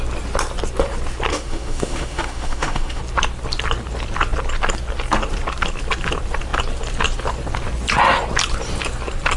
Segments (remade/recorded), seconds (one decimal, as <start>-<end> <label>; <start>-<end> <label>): 0.0-1.3 recorded; 1.3-3.0 remade; 3.0-9.4 recorded

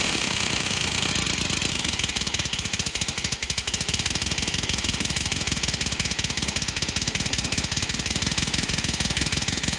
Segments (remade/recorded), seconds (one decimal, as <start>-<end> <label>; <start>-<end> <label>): 0.0-1.1 remade; 1.1-1.7 recorded; 1.7-9.8 remade

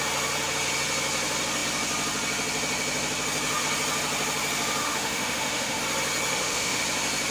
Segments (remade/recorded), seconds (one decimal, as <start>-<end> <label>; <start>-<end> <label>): 0.0-4.8 recorded; 4.8-5.8 remade; 5.8-6.3 recorded; 6.3-6.8 remade; 6.8-7.3 recorded

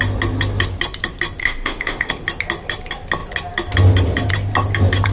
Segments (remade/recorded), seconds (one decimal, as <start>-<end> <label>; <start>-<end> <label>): 0.0-1.4 recorded; 1.4-2.1 remade; 2.1-5.1 recorded